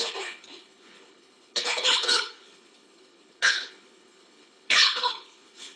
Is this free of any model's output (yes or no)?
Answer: no